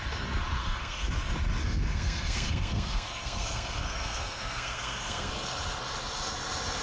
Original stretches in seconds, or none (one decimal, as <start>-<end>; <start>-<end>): 0.0-0.6; 1.1-1.6; 5.3-6.8